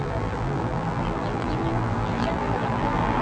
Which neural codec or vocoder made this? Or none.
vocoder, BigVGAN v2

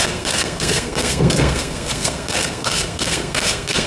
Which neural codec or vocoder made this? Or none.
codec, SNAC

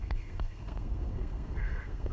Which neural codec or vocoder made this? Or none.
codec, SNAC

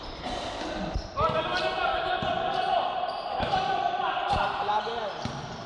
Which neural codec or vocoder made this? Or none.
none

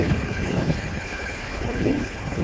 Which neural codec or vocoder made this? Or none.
codec, HILCodec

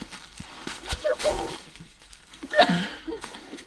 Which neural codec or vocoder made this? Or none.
codec, SNAC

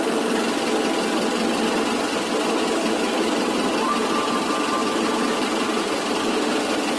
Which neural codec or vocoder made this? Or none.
none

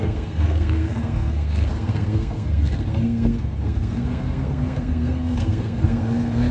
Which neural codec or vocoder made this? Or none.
codec, SNAC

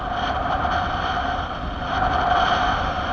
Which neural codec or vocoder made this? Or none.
none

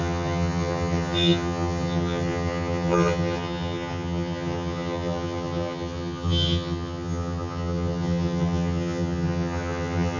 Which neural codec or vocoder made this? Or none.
vocoder, HiFi-GAN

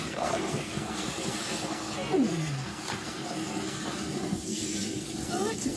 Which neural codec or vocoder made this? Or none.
codec, SNAC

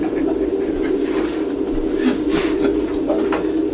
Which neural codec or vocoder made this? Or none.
none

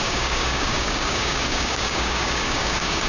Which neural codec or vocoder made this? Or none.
codec, DAC